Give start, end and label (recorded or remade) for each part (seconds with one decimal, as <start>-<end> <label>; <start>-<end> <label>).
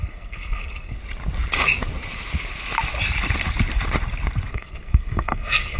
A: 0.0-1.0 remade; 1.0-4.5 recorded; 4.5-5.8 remade